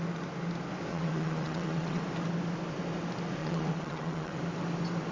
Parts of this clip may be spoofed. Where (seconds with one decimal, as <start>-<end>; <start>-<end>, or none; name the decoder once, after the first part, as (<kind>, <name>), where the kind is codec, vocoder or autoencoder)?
0.9-2.0 (vocoder, WaveNeXt); 3.4-4.4